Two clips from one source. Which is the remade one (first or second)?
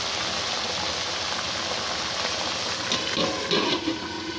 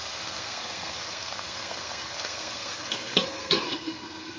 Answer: second